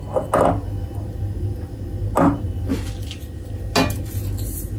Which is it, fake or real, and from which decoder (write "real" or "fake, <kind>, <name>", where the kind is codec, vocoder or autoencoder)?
real